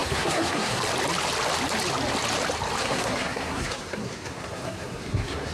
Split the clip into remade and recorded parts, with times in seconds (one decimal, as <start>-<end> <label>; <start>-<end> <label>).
0.0-0.8 remade; 0.8-2.8 recorded; 2.8-5.5 remade